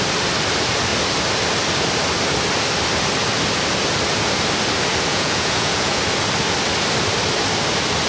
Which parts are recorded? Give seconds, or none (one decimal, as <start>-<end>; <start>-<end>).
0.0-5.1; 6.0-8.1